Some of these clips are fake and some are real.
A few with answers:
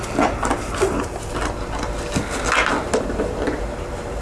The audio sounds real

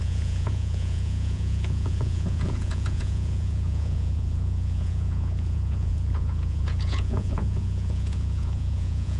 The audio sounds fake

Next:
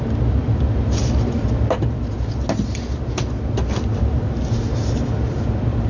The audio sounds real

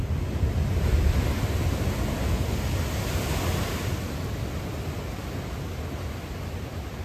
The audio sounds real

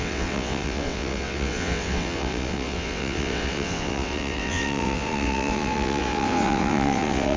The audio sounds fake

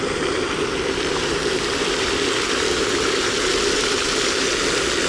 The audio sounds real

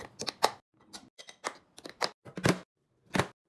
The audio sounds real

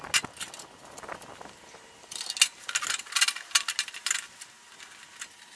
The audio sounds real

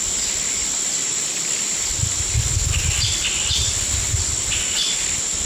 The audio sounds real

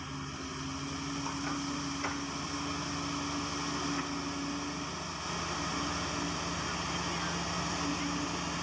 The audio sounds real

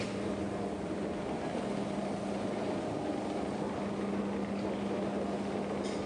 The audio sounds real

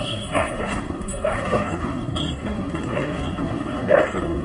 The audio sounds fake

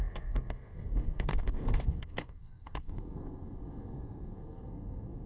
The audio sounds fake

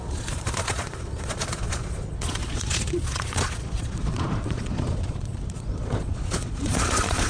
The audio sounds fake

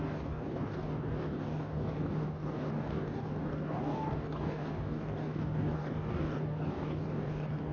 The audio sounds fake